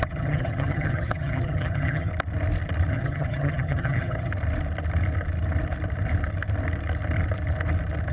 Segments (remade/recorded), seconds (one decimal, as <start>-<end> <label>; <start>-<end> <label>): 0.0-2.1 remade; 2.1-2.9 recorded; 2.9-4.3 remade; 4.3-8.1 recorded